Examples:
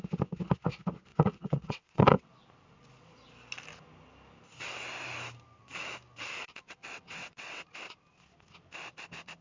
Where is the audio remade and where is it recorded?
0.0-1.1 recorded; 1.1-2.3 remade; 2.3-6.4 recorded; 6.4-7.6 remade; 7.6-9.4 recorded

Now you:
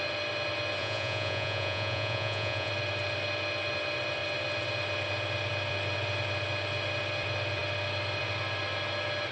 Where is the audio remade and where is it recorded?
0.0-0.8 recorded; 0.8-2.7 remade; 2.7-9.3 recorded

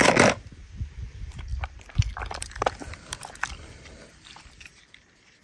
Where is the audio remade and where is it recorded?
0.0-0.9 recorded; 0.9-5.4 remade

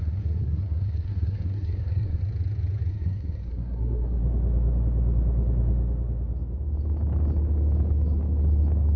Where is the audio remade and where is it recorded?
0.0-2.2 remade; 2.2-2.9 recorded; 2.9-4.2 remade; 4.2-9.0 recorded

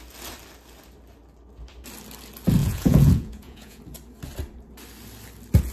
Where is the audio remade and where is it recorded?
0.0-2.6 recorded; 2.6-3.8 remade; 3.8-5.7 recorded

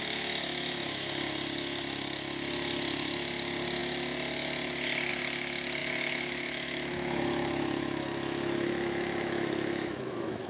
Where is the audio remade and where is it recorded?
0.0-5.8 recorded; 5.8-10.5 remade

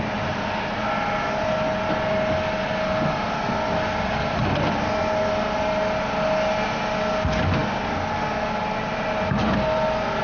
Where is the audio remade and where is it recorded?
0.0-10.2 recorded

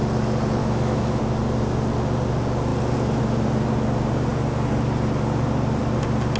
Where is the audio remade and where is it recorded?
0.0-0.6 recorded; 0.6-1.2 remade; 1.2-6.4 recorded